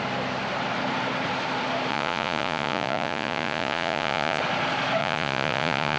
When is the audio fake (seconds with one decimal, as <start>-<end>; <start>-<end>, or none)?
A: 1.9-4.4; 5.0-6.0